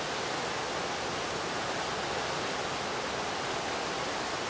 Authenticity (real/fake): real